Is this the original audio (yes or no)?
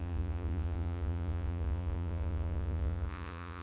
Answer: no